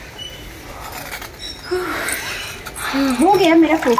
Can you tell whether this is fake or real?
real